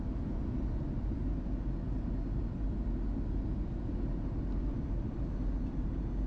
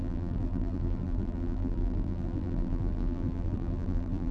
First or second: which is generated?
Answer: second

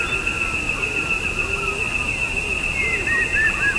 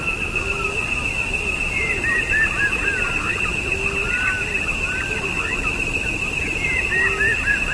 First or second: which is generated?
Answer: second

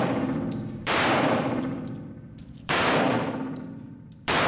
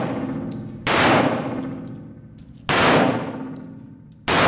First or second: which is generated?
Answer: first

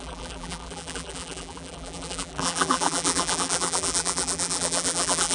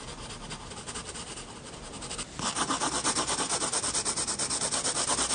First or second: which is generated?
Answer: first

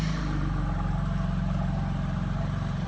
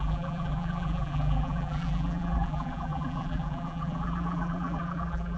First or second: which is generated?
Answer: second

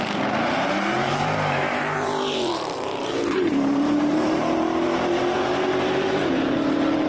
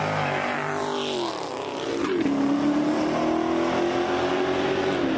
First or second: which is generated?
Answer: first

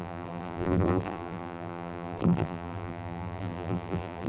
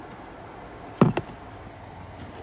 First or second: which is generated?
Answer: first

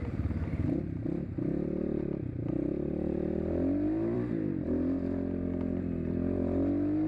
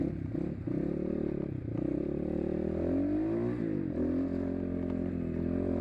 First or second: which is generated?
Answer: first